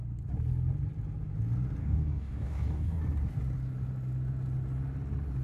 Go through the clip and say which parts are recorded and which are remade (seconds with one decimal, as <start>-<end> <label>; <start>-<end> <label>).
0.0-1.8 recorded; 1.8-3.0 remade; 3.0-5.4 recorded